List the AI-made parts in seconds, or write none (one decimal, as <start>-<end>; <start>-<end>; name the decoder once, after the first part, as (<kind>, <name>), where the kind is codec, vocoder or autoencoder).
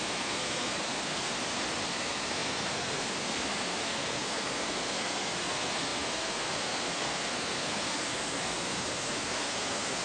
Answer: 0.0-1.3 (codec, SNAC); 1.9-10.0